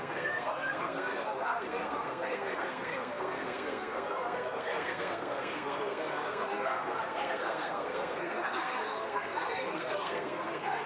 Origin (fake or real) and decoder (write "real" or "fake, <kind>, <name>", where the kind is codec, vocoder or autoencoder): fake, codec, SNAC